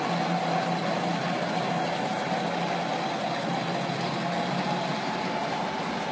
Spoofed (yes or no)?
no